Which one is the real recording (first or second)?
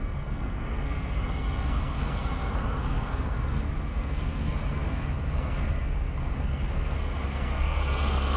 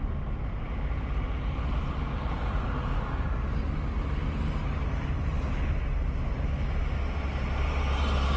second